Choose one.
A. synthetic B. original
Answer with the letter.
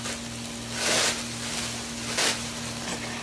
B